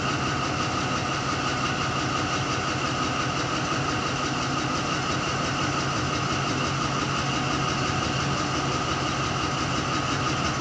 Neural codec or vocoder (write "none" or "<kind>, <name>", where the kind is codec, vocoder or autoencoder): none